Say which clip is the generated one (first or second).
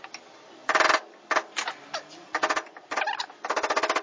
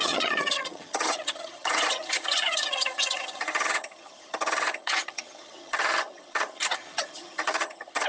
second